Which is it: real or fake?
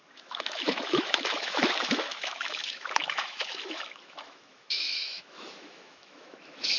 fake